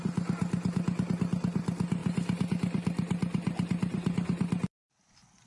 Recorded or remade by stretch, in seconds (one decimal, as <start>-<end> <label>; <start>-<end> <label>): 0.0-5.5 recorded

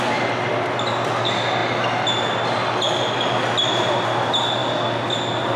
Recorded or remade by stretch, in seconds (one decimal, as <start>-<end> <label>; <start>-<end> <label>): 0.0-5.6 recorded

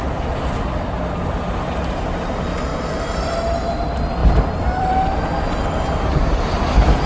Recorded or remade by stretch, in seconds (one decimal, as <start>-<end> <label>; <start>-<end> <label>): 0.0-2.7 recorded; 2.7-3.3 remade; 3.3-4.2 recorded; 4.2-4.9 remade; 4.9-7.1 recorded

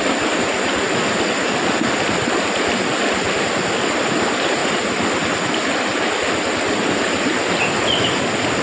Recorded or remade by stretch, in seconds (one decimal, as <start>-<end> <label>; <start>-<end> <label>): 0.0-4.6 recorded; 4.6-7.6 remade; 7.6-8.6 recorded

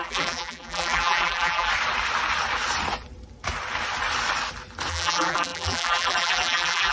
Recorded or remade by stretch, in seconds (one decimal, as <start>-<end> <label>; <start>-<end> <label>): 0.0-1.7 remade; 1.7-4.9 recorded; 4.9-6.9 remade

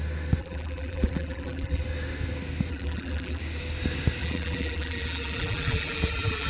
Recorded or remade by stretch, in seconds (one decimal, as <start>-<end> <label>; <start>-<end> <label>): 0.0-0.4 recorded; 0.4-1.8 remade; 1.8-2.7 recorded; 2.7-3.4 remade; 3.4-4.2 recorded; 4.2-6.5 remade

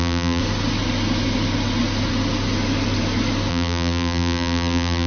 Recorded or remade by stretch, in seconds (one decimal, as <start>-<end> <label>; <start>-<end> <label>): 0.0-0.4 remade; 0.4-3.5 recorded; 3.5-5.1 remade